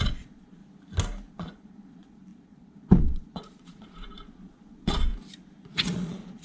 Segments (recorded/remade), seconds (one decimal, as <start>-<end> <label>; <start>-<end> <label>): 0.0-0.6 remade; 0.6-1.3 recorded; 1.3-5.1 remade; 5.1-5.6 recorded; 5.6-6.4 remade